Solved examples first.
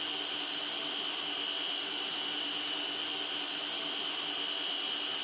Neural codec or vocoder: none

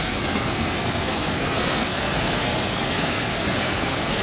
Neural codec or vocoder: codec, SNAC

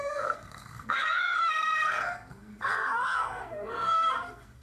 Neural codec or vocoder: codec, SNAC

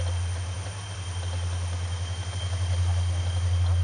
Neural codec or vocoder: none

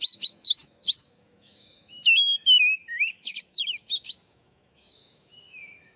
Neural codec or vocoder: autoencoder, DAC-VAE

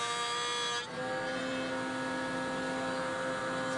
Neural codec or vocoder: none